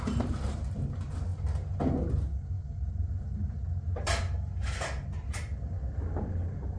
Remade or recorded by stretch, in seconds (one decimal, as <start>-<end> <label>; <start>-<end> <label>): 0.0-6.8 recorded